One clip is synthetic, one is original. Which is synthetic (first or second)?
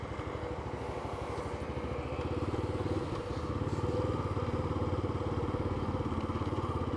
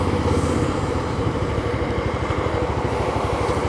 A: second